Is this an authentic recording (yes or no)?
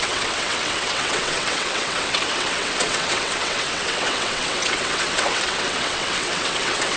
no